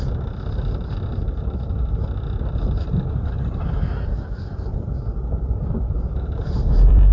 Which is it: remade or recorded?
remade